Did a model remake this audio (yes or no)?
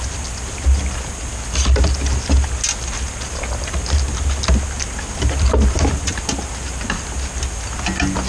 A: no